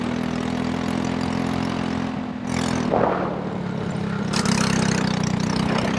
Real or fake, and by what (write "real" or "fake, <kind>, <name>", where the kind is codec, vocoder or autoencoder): real